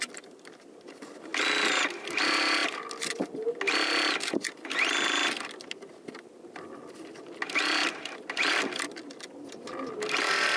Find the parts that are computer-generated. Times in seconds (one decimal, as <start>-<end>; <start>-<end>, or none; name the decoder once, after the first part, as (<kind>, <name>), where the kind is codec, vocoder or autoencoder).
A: none

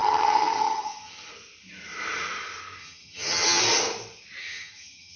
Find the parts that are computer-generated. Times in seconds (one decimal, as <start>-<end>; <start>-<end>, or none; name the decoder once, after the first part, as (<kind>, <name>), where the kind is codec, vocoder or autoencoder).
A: 0.0-1.3 (vocoder, HiFi-GAN); 2.8-3.6; 4.4-5.2